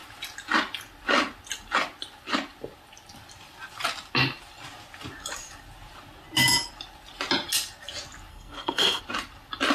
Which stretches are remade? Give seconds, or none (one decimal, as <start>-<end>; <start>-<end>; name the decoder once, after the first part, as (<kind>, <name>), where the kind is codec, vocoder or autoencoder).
8.3-9.0 (codec, SNAC)